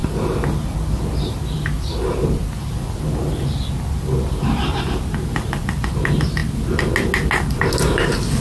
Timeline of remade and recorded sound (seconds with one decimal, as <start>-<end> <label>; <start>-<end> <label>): 0.0-8.4 recorded